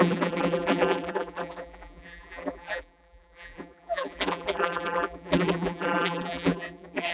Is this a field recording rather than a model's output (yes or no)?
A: no